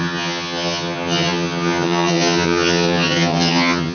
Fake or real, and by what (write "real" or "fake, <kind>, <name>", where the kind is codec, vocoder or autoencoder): fake, vocoder, HiFi-GAN